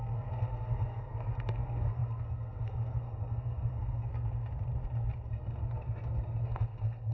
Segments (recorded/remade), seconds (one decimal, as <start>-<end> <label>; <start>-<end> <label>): 0.0-4.1 remade; 4.1-5.3 recorded; 5.3-7.1 remade